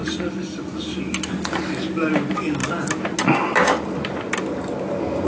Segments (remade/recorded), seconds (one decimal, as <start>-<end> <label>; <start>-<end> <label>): 0.0-5.3 recorded

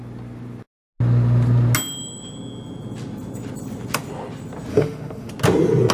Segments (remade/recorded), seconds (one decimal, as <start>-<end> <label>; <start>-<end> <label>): 0.0-4.7 recorded; 4.7-5.3 remade; 5.3-5.9 recorded